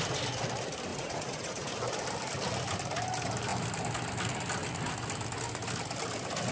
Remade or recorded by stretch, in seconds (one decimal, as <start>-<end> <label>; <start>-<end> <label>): 0.0-0.9 recorded; 0.9-1.7 remade; 1.7-6.5 recorded